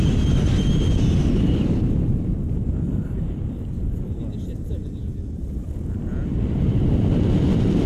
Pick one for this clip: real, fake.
fake